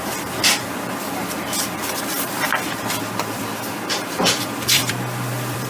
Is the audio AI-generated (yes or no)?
yes